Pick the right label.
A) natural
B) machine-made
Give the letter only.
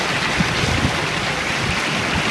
A